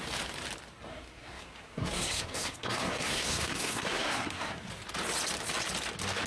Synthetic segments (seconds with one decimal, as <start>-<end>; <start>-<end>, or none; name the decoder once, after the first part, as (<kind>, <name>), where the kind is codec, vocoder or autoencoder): 0.9-4.7 (codec, SNAC)